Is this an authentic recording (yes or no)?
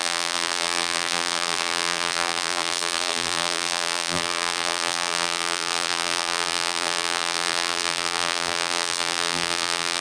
no